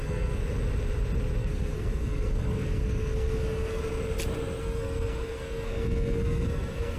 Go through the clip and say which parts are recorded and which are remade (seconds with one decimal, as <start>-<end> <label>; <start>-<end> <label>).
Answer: 0.0-0.4 remade; 0.4-1.4 recorded; 1.4-3.8 remade; 3.8-4.6 recorded; 4.6-7.0 remade